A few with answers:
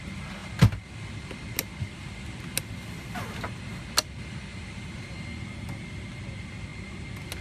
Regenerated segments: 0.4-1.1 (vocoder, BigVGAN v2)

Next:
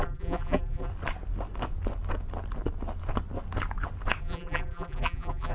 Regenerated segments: 0.0-0.9 (vocoder, BigVGAN v2); 4.2-5.5

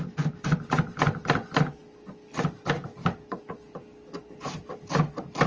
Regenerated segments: none

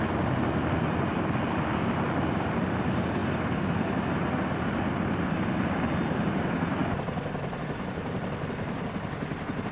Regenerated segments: none

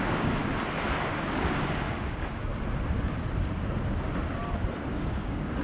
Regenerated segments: 0.0-0.4 (codec, DAC); 1.2-2.5; 4.9-5.6